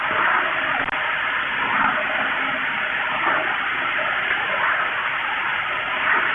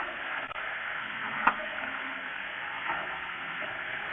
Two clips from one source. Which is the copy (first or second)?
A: second